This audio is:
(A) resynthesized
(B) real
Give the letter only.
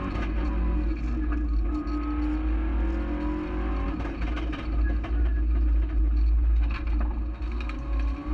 B